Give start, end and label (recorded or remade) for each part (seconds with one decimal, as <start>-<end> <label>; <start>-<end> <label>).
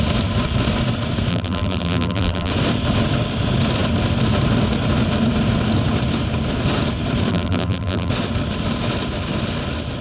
0.0-1.3 recorded; 1.3-2.5 remade; 2.5-7.3 recorded; 7.3-8.1 remade; 8.1-10.0 recorded